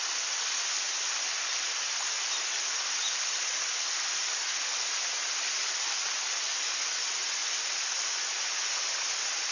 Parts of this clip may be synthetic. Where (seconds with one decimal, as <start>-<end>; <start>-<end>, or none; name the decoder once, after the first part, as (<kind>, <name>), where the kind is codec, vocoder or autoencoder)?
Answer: none